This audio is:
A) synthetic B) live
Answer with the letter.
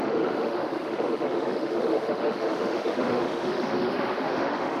A